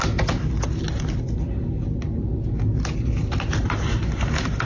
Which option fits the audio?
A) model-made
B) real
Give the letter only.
B